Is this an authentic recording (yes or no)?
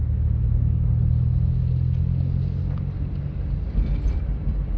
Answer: yes